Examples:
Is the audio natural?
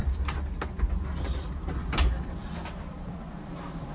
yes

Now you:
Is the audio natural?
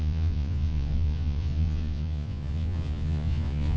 no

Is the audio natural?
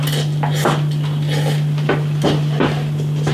yes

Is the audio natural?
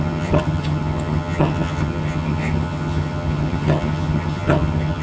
no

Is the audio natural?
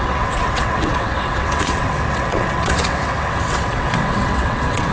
no